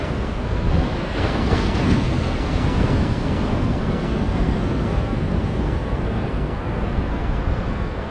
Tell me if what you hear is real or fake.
fake